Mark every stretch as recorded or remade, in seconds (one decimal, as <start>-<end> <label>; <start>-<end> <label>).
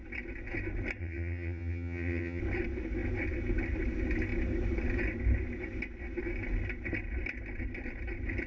0.0-1.0 recorded; 1.0-2.4 remade; 2.4-8.5 recorded